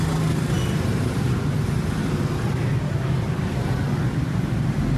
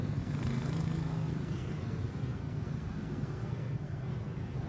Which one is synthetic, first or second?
second